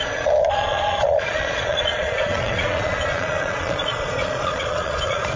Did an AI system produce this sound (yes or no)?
yes